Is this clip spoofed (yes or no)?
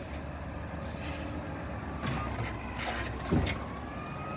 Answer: no